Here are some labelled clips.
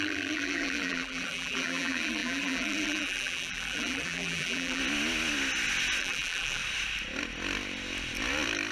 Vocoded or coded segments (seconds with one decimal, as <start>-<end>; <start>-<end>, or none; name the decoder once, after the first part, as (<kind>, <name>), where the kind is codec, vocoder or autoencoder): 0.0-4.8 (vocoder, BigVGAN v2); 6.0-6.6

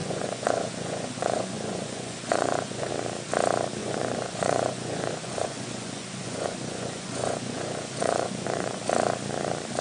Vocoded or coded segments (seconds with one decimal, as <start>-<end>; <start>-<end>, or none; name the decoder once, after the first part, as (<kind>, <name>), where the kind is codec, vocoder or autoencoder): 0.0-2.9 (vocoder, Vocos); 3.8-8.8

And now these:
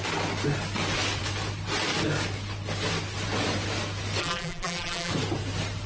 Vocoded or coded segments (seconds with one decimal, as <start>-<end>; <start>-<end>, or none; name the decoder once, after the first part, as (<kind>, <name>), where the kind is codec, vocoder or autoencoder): 4.2-5.1 (vocoder, BigVGAN v2)

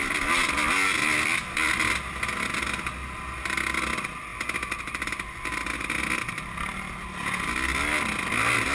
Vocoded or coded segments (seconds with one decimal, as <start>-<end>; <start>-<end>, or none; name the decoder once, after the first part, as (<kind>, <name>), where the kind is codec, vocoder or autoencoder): none

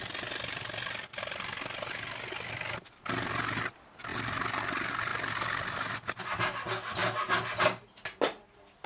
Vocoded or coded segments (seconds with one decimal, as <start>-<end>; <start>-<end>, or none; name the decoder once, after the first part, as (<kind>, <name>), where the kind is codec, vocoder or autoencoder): none

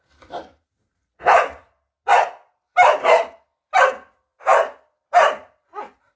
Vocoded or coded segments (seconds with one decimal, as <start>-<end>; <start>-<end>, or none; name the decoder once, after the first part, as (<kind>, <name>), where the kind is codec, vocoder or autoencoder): none

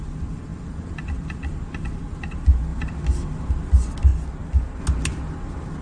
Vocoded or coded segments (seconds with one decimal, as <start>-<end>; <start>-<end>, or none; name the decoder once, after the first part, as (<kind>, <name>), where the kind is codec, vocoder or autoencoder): none

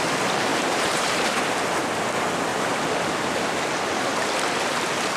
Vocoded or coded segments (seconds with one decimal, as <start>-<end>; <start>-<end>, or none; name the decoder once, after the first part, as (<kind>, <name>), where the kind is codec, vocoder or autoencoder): 0.5-1.3 (vocoder, BigVGAN v2); 2.5-3.8